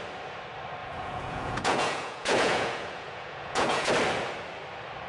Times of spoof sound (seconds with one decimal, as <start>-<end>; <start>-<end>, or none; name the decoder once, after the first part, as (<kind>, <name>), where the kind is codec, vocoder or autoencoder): 0.8-3.9 (vocoder, Vocos)